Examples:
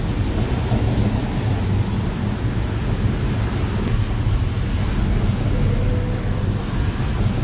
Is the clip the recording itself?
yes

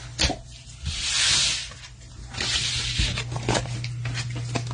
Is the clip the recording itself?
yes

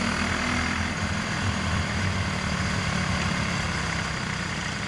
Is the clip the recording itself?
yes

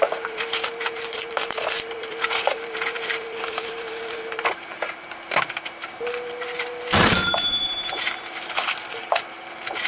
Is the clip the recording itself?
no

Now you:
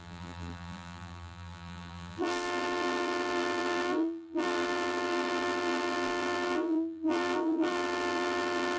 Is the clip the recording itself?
no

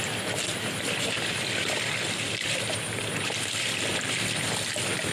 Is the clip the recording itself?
no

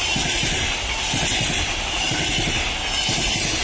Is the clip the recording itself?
yes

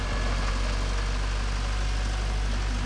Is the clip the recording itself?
yes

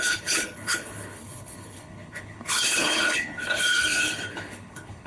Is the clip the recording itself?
no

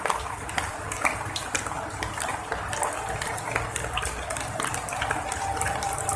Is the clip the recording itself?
yes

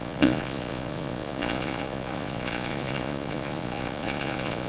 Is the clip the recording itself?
no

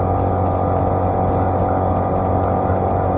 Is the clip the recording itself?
yes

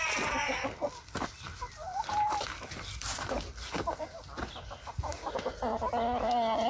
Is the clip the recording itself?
yes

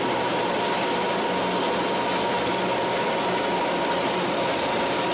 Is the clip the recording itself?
yes